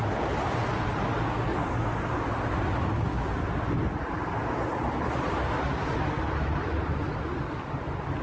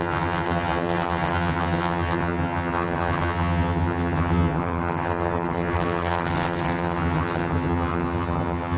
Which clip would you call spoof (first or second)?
second